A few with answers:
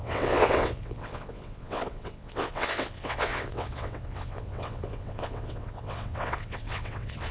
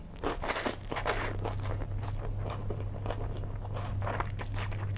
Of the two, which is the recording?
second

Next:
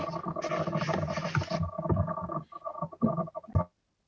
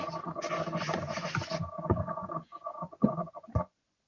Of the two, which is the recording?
first